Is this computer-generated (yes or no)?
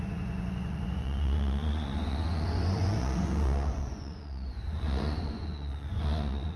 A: yes